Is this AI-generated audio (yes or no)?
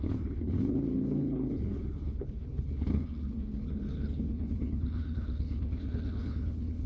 yes